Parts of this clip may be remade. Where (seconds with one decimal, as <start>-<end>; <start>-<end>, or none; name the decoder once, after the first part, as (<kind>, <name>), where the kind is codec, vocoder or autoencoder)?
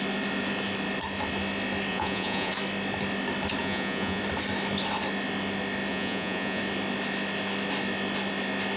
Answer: 1.9-2.5 (vocoder, Vocos); 3.6-4.2; 5.9-6.6